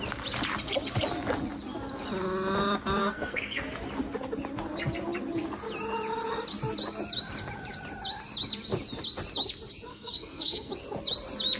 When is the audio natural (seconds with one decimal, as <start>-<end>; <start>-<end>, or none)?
0.0-3.0; 3.6-9.9; 10.7-11.6

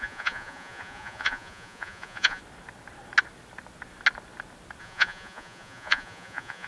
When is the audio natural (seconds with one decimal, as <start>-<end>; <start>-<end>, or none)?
2.4-4.8

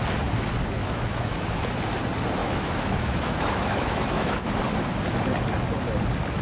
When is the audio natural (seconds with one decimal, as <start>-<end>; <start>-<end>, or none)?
0.0-0.8; 1.6-2.4; 4.6-6.4

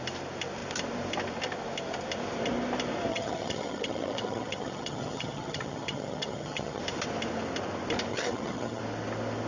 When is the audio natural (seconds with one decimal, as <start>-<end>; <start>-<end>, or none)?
0.0-3.1; 6.8-8.1; 8.8-9.5

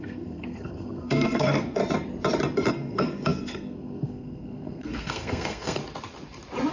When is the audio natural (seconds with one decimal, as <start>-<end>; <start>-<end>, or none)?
1.8-2.7; 5.8-6.7

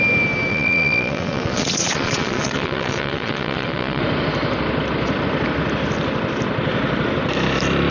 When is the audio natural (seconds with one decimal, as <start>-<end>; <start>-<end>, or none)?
0.0-0.5; 4.0-7.9